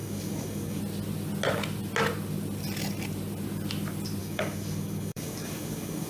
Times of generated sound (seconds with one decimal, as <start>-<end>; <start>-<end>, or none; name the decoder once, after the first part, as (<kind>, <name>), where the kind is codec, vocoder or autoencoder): 0.0-0.8 (codec, DAC); 4.2-6.1